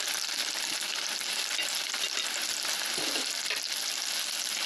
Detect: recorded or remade recorded